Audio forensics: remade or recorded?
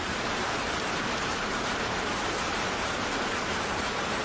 remade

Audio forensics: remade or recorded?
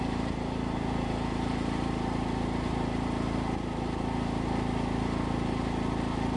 remade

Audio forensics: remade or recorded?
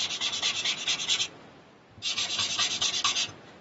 recorded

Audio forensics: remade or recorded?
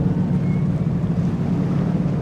recorded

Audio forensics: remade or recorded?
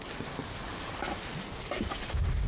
recorded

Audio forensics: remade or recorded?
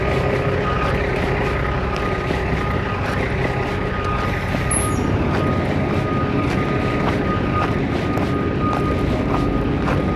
recorded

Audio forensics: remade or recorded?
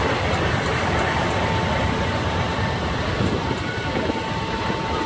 remade